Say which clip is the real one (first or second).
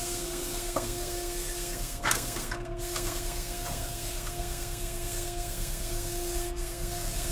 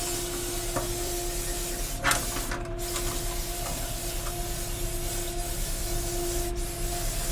second